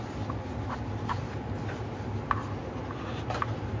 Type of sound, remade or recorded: recorded